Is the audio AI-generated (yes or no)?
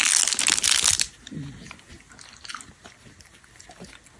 no